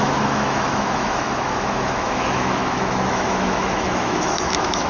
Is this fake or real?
fake